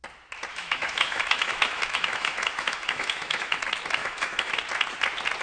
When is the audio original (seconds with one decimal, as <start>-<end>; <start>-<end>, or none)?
0.0-0.5; 3.6-4.0; 4.5-5.4